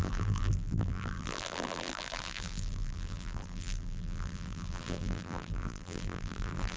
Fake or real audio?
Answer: fake